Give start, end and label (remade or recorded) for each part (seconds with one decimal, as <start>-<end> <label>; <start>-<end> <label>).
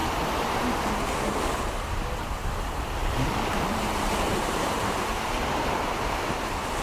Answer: 0.0-1.4 remade; 1.4-3.0 recorded; 3.0-5.4 remade; 5.4-6.8 recorded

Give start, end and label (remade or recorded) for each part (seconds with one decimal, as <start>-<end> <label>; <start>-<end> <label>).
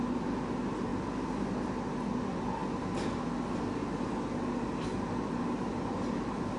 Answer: 0.0-6.6 recorded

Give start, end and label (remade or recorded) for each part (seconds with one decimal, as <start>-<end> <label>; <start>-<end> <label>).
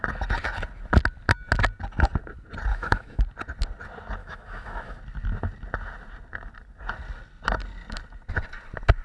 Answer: 0.0-2.7 recorded; 2.7-3.2 remade; 3.2-4.2 recorded; 4.2-5.0 remade; 5.0-9.0 recorded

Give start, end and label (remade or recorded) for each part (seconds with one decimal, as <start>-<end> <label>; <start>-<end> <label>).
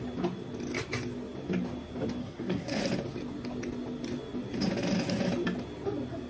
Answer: 0.0-2.2 recorded; 2.2-2.8 remade; 2.8-6.3 recorded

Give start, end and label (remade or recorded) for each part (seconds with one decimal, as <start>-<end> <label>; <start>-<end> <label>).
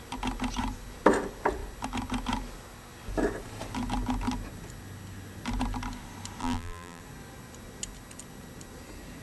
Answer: 0.0-6.4 recorded; 6.4-7.0 remade; 7.0-9.2 recorded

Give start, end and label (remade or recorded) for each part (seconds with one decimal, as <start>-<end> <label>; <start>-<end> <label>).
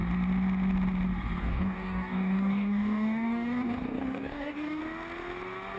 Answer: 0.0-1.4 recorded; 1.4-4.8 remade; 4.8-5.8 recorded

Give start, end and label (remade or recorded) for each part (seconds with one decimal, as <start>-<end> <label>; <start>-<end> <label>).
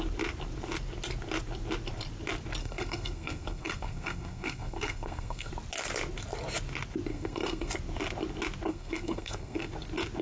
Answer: 0.0-2.6 recorded; 2.6-5.5 remade; 5.5-7.1 recorded; 7.1-7.7 remade; 7.7-8.7 recorded; 8.7-9.7 remade; 9.7-10.2 recorded